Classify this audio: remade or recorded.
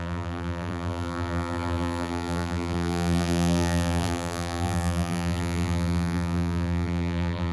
remade